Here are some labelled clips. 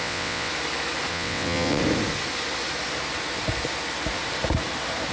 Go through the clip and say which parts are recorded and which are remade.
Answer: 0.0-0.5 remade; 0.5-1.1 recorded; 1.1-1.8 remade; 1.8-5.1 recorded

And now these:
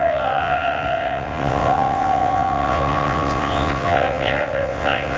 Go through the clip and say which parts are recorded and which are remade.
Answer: 0.0-5.2 remade

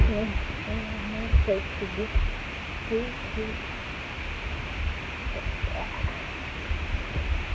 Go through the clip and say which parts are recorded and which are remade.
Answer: 0.0-7.5 recorded

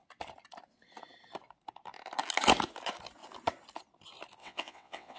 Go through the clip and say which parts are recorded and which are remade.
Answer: 0.0-4.4 recorded; 4.4-5.2 remade

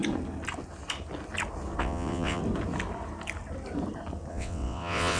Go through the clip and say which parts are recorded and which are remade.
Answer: 0.0-1.8 recorded; 1.8-2.4 remade; 2.4-4.3 recorded; 4.3-5.2 remade

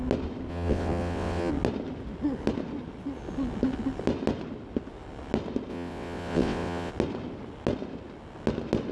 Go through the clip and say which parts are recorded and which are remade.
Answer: 0.0-0.5 recorded; 0.5-1.5 remade; 1.5-5.7 recorded; 5.7-6.9 remade; 6.9-8.9 recorded

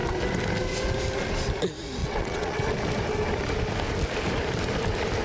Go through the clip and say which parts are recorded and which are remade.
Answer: 0.0-2.0 recorded; 2.0-2.6 remade; 2.6-5.2 recorded

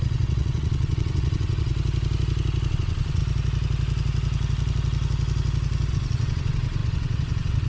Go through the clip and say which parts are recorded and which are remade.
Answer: 0.0-1.7 remade; 1.7-2.7 recorded; 2.7-3.2 remade; 3.2-5.9 recorded; 5.9-7.7 remade